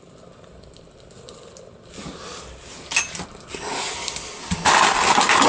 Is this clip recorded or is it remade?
recorded